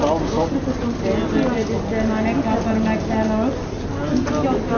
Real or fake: real